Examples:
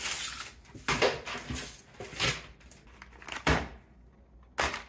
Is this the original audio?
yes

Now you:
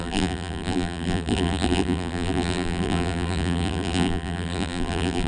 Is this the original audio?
no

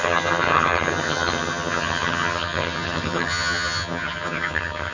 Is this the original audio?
no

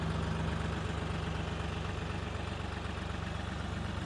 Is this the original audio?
yes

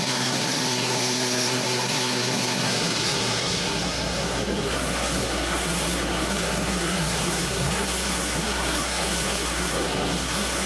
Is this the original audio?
no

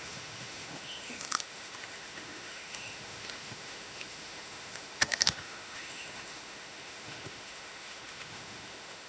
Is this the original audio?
no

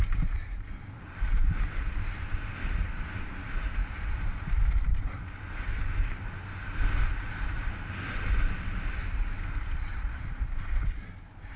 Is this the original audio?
yes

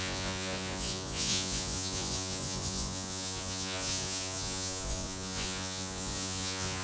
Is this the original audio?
no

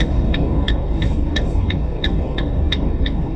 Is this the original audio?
no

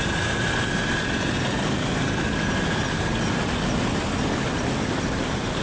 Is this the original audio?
yes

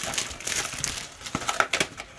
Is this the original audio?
yes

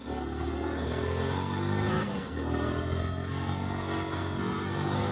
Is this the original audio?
no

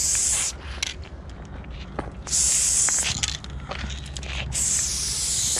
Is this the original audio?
yes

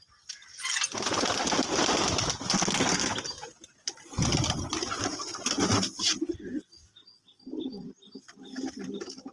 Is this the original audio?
yes